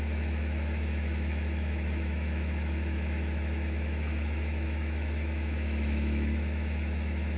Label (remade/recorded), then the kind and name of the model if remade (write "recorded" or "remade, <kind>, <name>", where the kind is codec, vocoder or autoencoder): remade, autoencoder, DAC-VAE